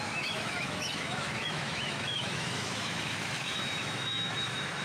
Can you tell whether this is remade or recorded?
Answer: remade